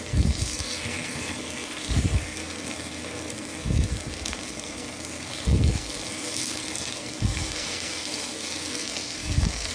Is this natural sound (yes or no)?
no